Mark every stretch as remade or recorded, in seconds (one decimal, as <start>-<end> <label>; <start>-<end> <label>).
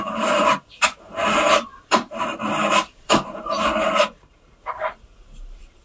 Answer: 0.0-5.8 remade